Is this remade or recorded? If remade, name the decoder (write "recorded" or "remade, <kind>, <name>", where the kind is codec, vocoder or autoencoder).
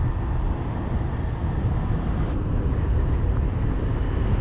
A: recorded